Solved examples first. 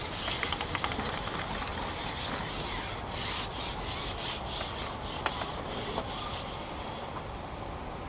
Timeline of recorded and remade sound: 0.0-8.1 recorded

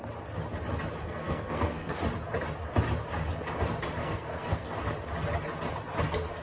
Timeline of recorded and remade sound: 0.0-1.0 recorded; 1.0-2.0 remade; 2.0-4.0 recorded; 4.0-4.7 remade; 4.7-6.4 recorded

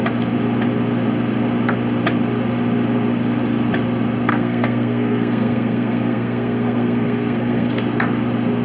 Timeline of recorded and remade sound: 0.0-4.3 recorded; 4.3-7.7 remade; 7.7-8.6 recorded

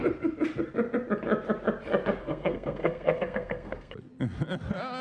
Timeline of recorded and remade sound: 0.0-2.2 recorded; 2.2-3.9 remade; 3.9-5.0 recorded

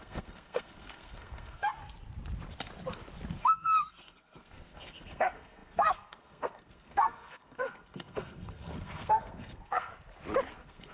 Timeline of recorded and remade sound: 0.0-1.8 remade; 1.8-3.4 recorded; 3.4-9.9 remade; 9.9-10.5 recorded; 10.5-10.9 remade

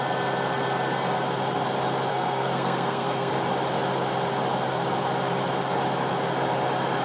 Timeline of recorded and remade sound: 0.0-2.1 recorded; 2.1-3.3 remade; 3.3-7.0 recorded

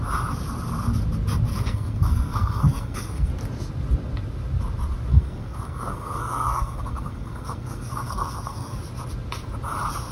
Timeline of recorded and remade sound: 0.0-1.5 recorded; 1.5-3.3 remade; 3.3-5.1 recorded; 5.1-8.8 remade; 8.8-10.1 recorded